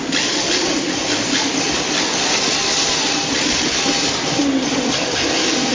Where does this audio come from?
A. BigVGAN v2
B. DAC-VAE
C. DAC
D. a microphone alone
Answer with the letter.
D